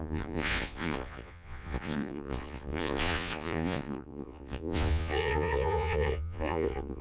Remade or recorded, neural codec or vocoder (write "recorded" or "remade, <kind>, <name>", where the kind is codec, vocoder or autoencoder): remade, vocoder, Vocos